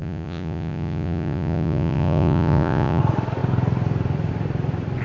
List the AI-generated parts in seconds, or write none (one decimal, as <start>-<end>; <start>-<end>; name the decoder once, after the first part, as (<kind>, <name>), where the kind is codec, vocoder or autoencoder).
0.0-3.0 (vocoder, Vocos)